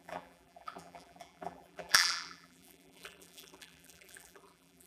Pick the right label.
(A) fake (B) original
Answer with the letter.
A